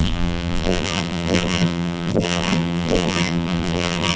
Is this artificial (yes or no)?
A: yes